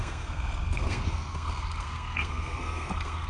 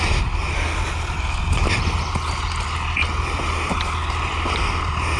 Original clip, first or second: second